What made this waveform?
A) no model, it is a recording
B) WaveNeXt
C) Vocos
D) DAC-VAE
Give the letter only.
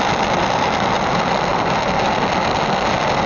A